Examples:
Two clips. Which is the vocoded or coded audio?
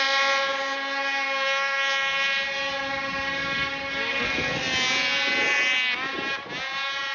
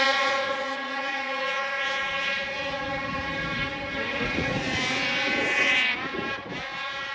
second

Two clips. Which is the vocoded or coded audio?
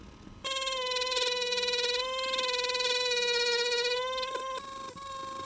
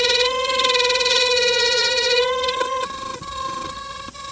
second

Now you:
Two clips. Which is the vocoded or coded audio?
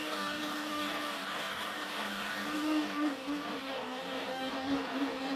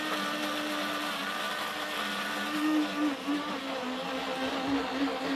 first